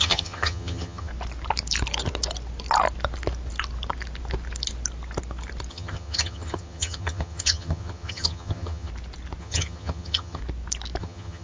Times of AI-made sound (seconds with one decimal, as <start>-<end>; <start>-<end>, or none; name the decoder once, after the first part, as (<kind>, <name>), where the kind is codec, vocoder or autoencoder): 0.0-1.1 (vocoder, HiFi-GAN); 5.7-8.9; 9.4-10.4; 11.0-11.4